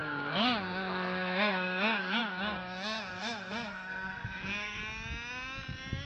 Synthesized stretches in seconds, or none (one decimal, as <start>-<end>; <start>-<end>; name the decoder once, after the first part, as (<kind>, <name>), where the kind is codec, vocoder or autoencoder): 0.0-4.8 (codec, SNAC)